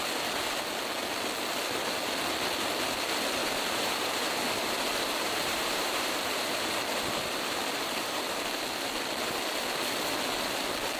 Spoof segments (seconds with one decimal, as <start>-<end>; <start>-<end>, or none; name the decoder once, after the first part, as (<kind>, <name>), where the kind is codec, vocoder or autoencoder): 3.4-6.8 (vocoder, BigVGAN v2); 7.8-8.9